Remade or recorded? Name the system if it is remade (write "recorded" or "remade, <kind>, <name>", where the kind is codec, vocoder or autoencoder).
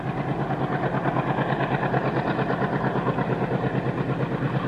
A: recorded